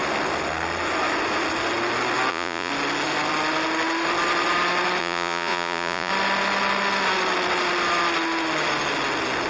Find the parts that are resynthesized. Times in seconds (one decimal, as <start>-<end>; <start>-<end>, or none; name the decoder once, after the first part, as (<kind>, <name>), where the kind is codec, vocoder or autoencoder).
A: 2.3-2.7 (vocoder, Vocos); 5.0-6.1